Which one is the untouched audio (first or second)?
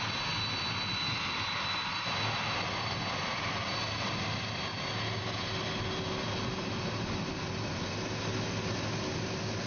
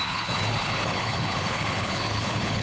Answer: first